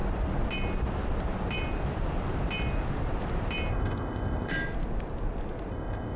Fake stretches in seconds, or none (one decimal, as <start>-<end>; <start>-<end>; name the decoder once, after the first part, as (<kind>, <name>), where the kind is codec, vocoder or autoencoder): 3.7-4.5 (codec, ZipCodec); 5.7-6.2